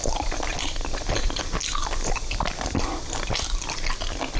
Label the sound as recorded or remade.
recorded